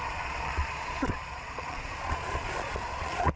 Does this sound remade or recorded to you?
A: remade